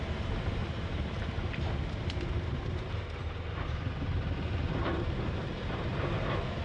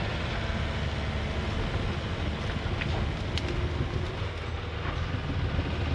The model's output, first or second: first